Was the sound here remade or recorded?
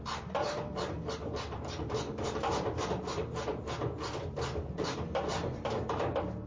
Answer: remade